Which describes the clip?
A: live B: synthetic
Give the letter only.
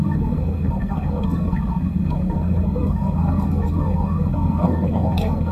B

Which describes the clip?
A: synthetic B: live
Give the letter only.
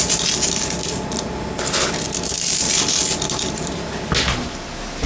B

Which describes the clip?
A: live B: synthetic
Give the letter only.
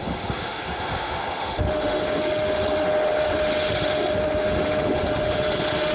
B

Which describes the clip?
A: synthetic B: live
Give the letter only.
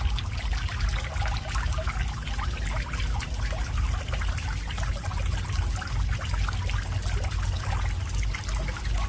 B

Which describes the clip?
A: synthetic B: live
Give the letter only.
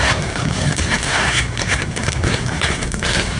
A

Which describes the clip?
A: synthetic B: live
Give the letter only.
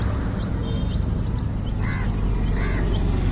B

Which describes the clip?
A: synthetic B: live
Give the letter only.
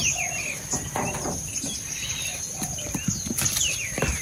B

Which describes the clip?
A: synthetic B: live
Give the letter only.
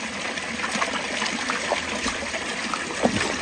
B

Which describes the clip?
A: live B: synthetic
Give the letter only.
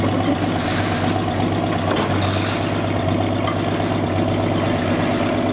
A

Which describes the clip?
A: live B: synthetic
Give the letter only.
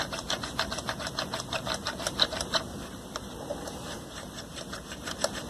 B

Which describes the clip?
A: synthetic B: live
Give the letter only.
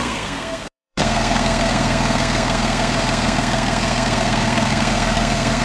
A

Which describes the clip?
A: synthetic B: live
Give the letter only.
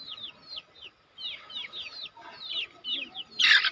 B